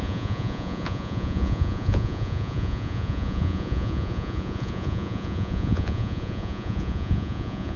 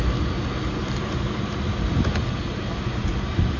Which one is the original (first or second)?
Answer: second